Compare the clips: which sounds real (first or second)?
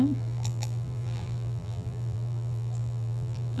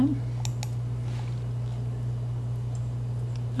second